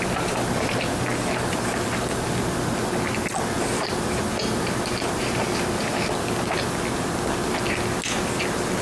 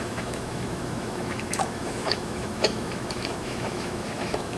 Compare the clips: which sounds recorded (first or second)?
first